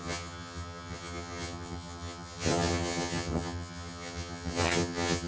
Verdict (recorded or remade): remade